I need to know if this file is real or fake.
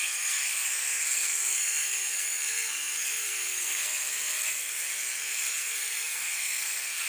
fake